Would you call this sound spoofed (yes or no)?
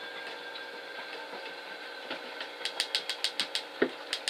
no